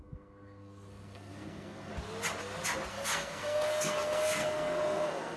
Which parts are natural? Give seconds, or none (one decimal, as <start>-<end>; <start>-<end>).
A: 1.9-2.9